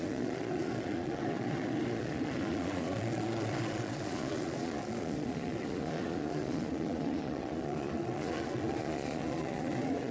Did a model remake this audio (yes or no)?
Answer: yes